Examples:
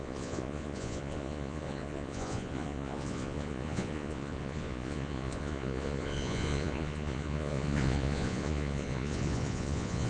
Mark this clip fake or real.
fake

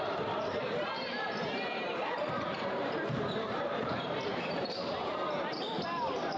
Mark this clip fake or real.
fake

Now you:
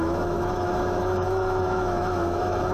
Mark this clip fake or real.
fake